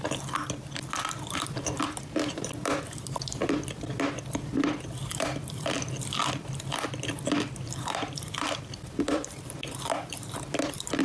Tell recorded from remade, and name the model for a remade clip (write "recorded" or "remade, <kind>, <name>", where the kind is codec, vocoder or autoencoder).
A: remade, vocoder, BigVGAN v2